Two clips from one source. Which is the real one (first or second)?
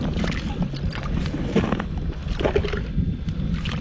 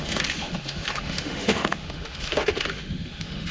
first